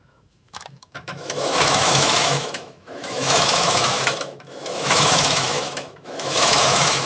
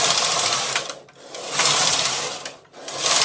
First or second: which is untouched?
second